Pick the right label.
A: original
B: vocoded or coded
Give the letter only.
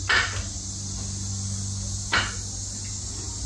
A